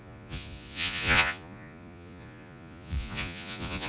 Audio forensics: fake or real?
fake